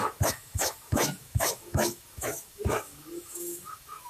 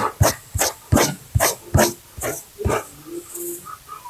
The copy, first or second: first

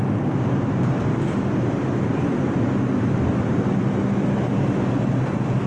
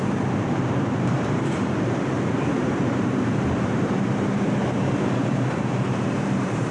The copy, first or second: second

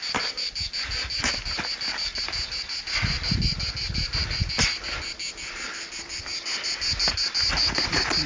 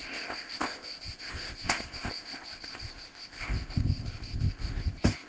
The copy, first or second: second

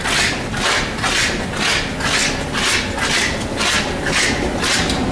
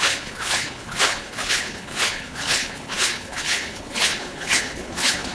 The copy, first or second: second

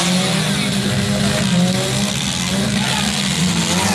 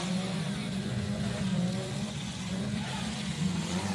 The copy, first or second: second